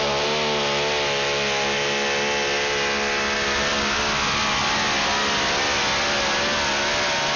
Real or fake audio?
real